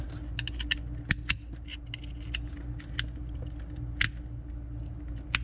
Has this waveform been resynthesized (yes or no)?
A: no